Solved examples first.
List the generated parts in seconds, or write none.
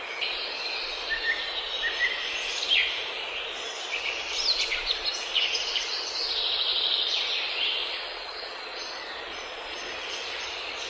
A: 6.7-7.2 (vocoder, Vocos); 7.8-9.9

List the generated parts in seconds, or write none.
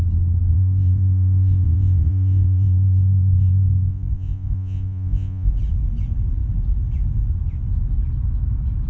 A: 0.5-5.5 (vocoder, Vocos)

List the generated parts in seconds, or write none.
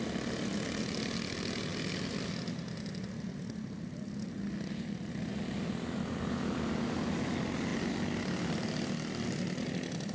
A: none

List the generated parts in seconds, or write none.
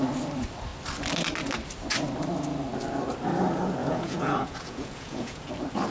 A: 3.8-5.5 (vocoder, Vocos)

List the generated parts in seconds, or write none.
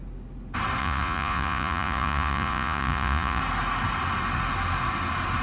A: 0.8-3.4 (vocoder, Vocos)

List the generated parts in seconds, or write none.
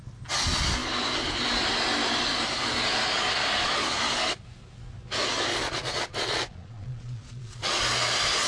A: 5.5-7.8 (vocoder, Vocos)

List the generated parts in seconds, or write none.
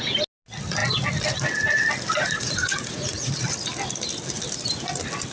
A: 2.2-3.3 (vocoder, Vocos)